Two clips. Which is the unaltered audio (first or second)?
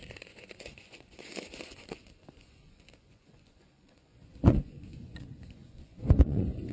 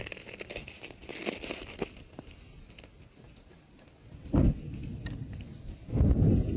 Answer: second